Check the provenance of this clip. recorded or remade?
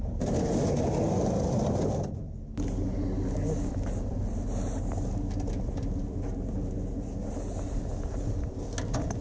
recorded